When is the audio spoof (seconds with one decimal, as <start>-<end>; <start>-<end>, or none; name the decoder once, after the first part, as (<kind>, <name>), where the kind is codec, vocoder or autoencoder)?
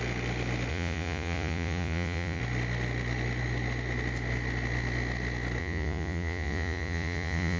0.7-2.4 (vocoder, Vocos); 5.6-7.6